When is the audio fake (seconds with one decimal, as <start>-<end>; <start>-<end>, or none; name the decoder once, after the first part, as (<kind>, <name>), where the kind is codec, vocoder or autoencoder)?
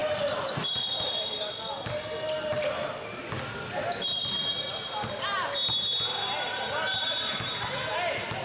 none